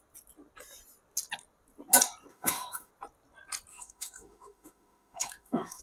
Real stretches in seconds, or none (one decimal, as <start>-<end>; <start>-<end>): 0.0-2.3; 2.9-3.7